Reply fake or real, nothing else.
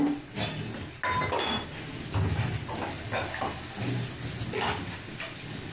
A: real